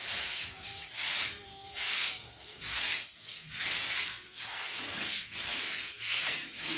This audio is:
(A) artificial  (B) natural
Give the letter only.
A